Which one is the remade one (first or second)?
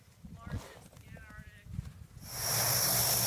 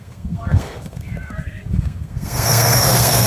second